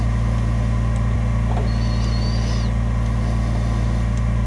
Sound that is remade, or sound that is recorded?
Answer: recorded